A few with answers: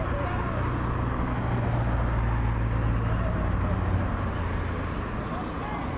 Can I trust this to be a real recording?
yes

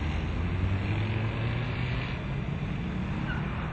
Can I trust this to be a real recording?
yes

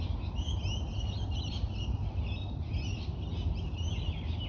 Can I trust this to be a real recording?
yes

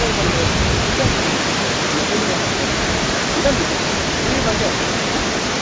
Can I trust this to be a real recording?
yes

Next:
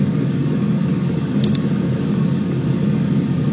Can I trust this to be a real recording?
no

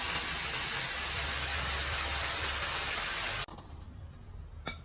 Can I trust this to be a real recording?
yes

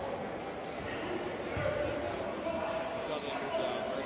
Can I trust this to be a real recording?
yes